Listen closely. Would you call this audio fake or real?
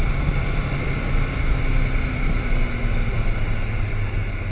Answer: real